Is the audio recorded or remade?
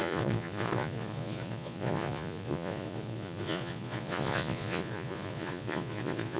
remade